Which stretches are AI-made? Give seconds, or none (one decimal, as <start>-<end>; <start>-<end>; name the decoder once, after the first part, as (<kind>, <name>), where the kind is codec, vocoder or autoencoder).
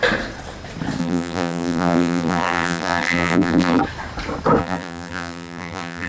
1.0-3.8 (vocoder, BigVGAN v2); 4.6-6.1